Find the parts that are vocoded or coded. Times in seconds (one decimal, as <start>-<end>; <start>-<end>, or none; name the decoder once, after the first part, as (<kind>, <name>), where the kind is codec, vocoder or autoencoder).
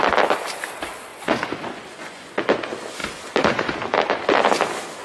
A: 1.1-2.4 (vocoder, Vocos)